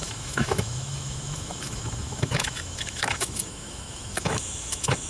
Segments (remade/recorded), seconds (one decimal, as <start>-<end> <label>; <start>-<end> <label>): 0.0-5.1 remade